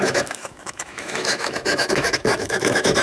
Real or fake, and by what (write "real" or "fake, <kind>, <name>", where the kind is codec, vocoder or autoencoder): fake, autoencoder, DAC-VAE